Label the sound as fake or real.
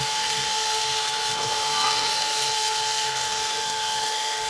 fake